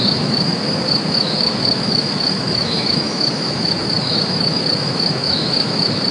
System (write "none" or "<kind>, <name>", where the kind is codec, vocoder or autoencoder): autoencoder, DAC-VAE